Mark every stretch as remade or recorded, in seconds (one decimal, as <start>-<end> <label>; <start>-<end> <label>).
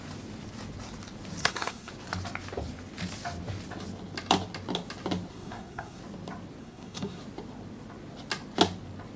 0.0-1.4 recorded; 1.4-1.9 remade; 1.9-5.3 recorded; 5.3-6.0 remade; 6.0-6.6 recorded; 6.6-7.2 remade; 7.2-9.2 recorded